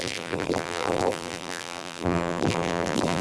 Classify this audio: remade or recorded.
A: remade